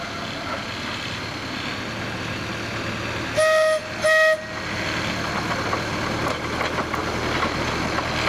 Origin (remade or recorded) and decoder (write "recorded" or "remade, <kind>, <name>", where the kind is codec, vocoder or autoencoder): recorded